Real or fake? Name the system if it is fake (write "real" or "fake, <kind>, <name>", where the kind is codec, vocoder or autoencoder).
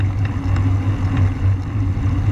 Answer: real